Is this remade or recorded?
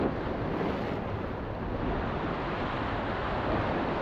recorded